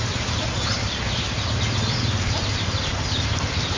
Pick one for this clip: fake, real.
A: real